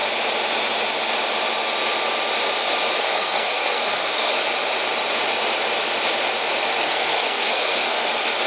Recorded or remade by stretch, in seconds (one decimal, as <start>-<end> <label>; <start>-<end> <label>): 0.0-3.0 recorded; 3.0-4.3 remade; 4.3-6.8 recorded; 6.8-8.1 remade; 8.1-8.5 recorded